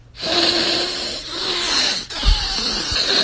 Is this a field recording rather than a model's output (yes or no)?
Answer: no